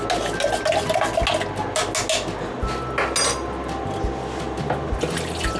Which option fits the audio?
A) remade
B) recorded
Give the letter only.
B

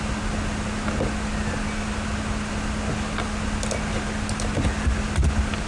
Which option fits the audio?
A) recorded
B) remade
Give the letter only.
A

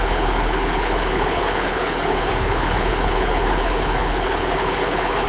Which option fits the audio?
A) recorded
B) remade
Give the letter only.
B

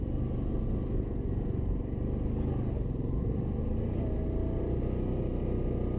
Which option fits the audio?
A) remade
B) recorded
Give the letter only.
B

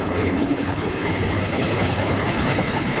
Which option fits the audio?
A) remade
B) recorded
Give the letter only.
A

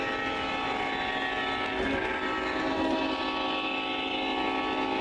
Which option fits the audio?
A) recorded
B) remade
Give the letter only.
A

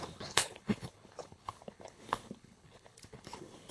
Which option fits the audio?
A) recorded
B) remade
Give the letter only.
B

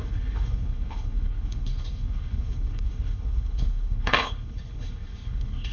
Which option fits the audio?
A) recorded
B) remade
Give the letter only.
B